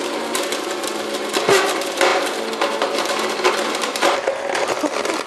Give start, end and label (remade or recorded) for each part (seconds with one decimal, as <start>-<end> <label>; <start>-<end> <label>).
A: 0.0-5.3 recorded